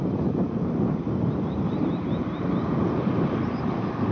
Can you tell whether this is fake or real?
fake